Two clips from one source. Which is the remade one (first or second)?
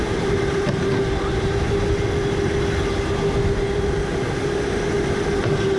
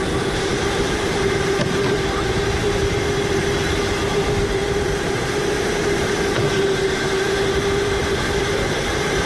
second